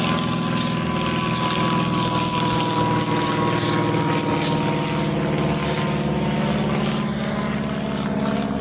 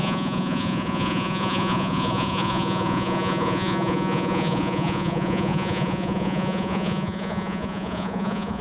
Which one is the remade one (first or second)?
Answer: second